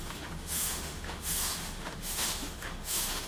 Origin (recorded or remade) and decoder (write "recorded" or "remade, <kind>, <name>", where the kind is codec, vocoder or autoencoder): remade, autoencoder, DAC-VAE